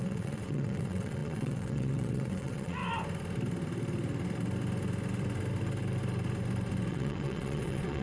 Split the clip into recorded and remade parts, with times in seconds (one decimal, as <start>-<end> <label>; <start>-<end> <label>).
0.0-2.8 remade; 2.8-6.9 recorded; 6.9-8.0 remade